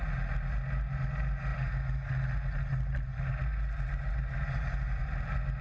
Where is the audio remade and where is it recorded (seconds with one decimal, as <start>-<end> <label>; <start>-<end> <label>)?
0.0-5.6 recorded